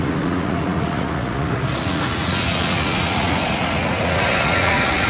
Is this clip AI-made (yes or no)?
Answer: yes